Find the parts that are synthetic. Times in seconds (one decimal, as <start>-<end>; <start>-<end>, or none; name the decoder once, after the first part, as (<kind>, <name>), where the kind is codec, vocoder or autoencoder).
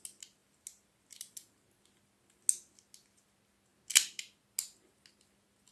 none